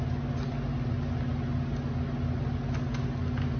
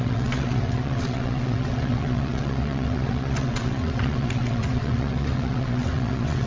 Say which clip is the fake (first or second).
second